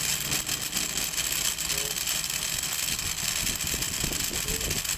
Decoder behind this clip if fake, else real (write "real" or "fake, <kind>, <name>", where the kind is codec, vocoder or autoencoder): real